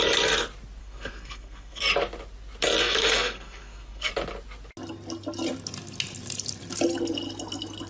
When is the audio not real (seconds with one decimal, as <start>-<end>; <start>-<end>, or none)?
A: 0.8-1.8; 2.8-4.1